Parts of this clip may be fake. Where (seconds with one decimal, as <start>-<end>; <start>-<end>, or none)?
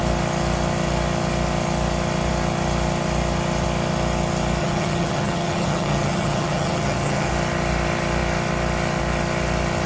4.6-7.3